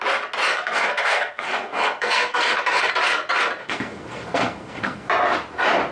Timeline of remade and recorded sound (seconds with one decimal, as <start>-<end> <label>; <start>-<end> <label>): 0.0-0.5 recorded; 0.5-2.9 remade; 2.9-3.6 recorded; 3.6-5.1 remade; 5.1-5.9 recorded